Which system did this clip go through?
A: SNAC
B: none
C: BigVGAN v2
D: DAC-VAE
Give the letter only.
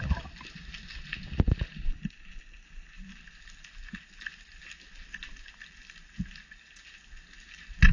B